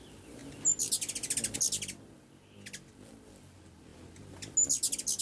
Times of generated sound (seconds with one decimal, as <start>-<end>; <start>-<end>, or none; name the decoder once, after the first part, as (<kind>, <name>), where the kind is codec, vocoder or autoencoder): none